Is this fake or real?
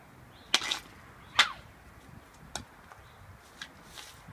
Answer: real